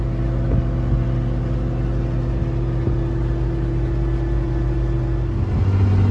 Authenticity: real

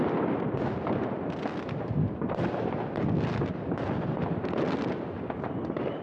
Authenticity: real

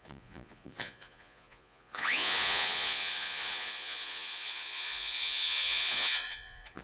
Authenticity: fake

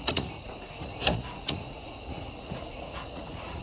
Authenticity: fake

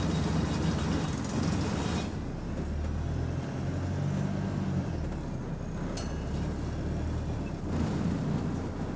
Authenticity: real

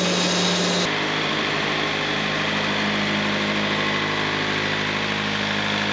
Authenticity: real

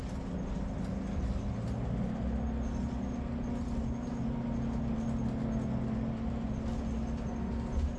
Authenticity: real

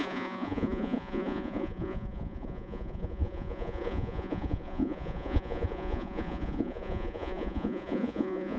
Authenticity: fake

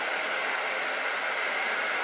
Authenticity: real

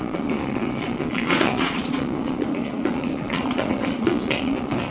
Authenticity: fake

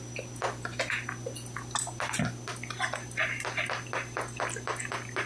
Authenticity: real